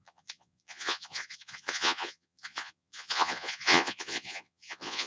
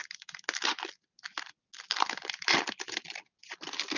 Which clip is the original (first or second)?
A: second